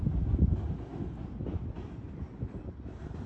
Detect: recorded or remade recorded